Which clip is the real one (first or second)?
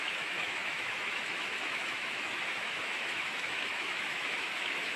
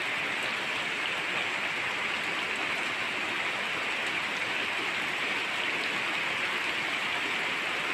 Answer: second